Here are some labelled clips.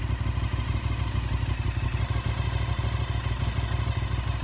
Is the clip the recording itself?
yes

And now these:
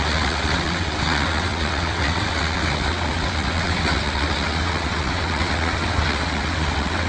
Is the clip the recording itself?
no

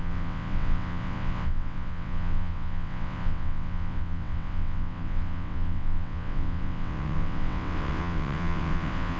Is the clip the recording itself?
no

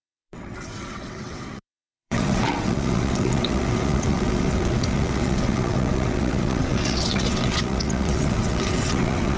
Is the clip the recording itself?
no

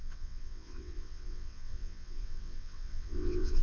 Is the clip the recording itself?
no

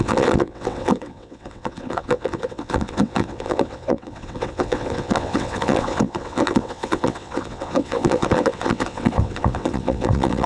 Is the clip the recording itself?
no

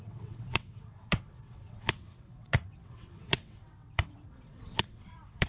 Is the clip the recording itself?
no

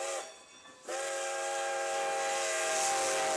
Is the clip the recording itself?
yes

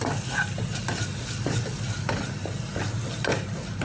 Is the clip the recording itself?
yes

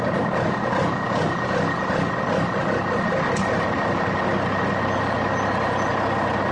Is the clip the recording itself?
yes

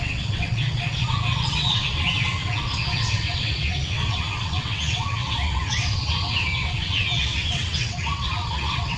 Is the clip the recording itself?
no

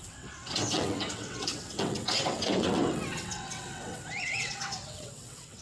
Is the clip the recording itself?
no